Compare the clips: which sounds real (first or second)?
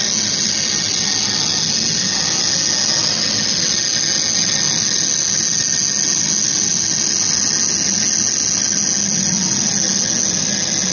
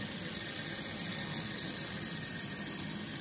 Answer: first